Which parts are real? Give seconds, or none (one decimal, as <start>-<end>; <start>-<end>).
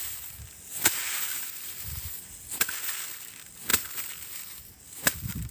0.0-3.7; 4.5-5.5